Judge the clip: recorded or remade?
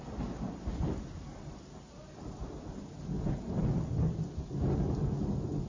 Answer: recorded